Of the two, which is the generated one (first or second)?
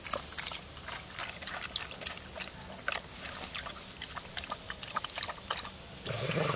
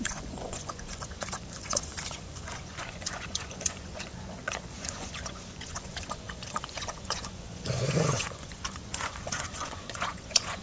second